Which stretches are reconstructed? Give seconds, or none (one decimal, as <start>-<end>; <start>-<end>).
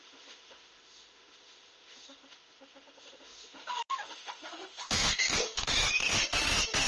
0.0-6.9